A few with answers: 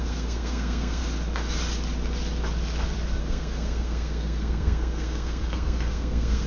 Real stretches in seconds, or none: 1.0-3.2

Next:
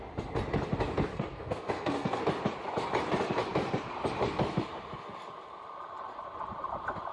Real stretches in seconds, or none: 0.0-1.1; 2.2-7.1

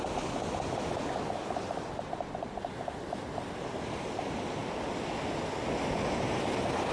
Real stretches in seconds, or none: 0.0-6.9

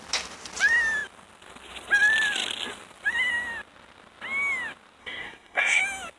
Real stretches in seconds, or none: 0.0-5.0; 5.8-6.2

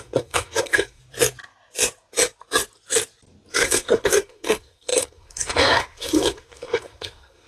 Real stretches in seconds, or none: 1.0-3.5